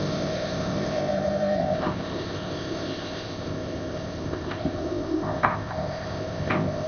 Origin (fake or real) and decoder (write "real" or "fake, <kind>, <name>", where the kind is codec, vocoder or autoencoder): fake, codec, ZipCodec